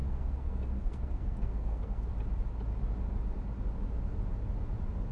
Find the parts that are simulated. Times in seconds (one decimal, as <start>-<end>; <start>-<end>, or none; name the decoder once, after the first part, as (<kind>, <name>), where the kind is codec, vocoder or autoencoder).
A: 0.0-2.1 (codec, SNAC)